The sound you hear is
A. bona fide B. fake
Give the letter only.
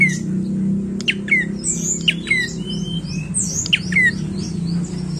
A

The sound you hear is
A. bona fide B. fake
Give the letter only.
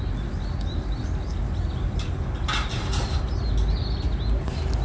A